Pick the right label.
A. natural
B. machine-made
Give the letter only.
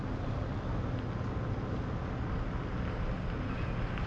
A